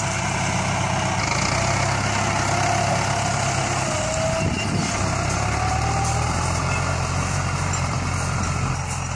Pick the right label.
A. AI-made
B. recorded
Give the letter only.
B